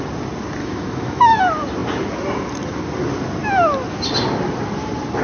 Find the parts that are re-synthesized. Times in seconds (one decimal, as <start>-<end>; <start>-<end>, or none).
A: 0.6-1.4

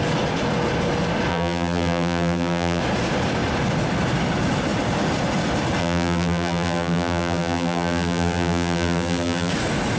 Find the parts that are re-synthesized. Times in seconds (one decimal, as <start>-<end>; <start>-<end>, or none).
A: 1.3-2.8; 5.8-9.5

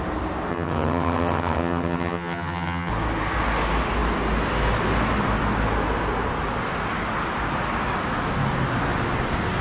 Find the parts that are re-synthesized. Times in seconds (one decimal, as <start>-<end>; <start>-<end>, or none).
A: 0.5-2.9

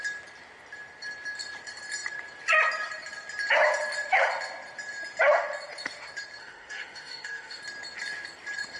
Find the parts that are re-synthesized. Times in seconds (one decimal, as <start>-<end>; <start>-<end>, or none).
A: 6.4-7.6

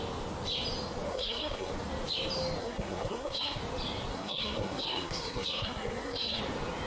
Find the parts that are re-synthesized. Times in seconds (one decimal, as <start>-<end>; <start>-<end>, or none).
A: 1.1-1.7; 2.6-3.6; 4.1-6.4

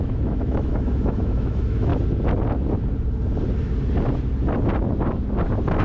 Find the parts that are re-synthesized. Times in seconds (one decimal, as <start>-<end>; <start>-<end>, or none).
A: 0.0-1.9

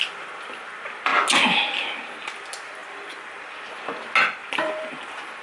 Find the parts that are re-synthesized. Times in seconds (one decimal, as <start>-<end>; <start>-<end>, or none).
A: 4.4-5.0

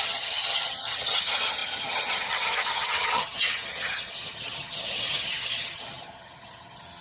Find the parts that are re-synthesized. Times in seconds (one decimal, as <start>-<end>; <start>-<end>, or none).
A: 0.0-7.0